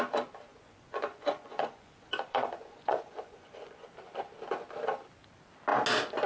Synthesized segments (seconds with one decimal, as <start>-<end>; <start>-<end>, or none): 0.5-3.9